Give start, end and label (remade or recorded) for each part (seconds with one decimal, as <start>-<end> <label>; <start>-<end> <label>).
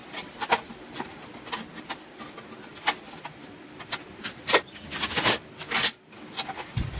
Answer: 0.0-1.4 remade; 1.4-2.7 recorded; 2.7-7.0 remade